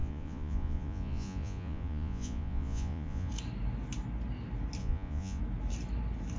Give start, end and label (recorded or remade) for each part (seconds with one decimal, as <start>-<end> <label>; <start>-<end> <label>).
0.0-3.3 remade; 3.3-4.8 recorded; 4.8-5.4 remade; 5.4-6.4 recorded

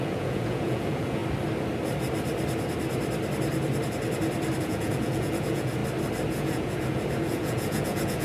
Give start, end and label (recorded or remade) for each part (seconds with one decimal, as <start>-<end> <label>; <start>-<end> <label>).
0.0-1.2 remade; 1.2-4.6 recorded; 4.6-5.8 remade; 5.8-6.3 recorded; 6.3-8.2 remade

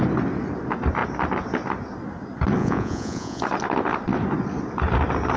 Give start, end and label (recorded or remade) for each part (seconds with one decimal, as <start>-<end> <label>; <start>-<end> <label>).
0.0-2.6 recorded; 2.6-3.4 remade; 3.4-5.4 recorded